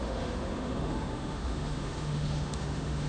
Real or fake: fake